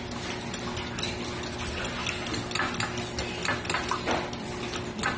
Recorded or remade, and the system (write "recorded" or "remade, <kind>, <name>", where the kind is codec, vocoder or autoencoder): recorded